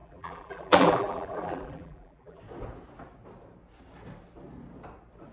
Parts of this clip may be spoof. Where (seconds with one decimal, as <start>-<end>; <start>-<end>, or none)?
0.0-2.4

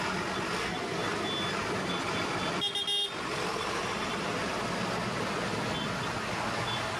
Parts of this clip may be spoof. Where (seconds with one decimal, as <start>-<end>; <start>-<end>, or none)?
3.5-4.7

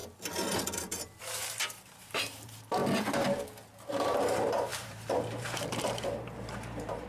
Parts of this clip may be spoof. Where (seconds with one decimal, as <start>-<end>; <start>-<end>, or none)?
1.2-2.8; 3.9-7.1

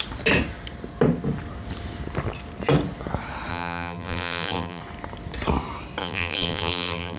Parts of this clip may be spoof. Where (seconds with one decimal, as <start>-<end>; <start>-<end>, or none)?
3.5-4.8; 6.0-7.2

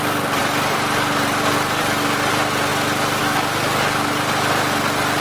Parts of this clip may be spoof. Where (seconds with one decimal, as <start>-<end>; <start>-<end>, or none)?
0.4-2.3; 2.7-3.2